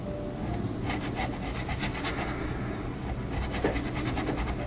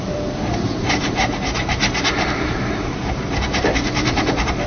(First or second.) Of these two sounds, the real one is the first